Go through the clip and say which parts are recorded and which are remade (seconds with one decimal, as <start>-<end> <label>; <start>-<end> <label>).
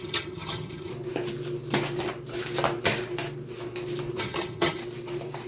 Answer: 0.0-0.9 remade; 0.9-4.2 recorded; 4.2-4.8 remade; 4.8-5.5 recorded